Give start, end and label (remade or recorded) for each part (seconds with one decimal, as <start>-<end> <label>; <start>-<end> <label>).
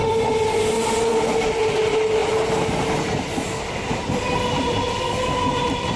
0.0-0.9 remade; 0.9-6.0 recorded